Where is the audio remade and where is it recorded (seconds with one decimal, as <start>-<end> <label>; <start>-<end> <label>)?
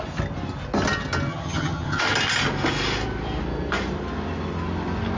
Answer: 0.0-1.3 recorded; 1.3-2.0 remade; 2.0-5.2 recorded